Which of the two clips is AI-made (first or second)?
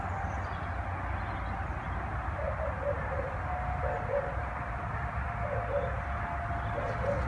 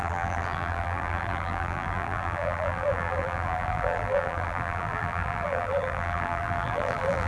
second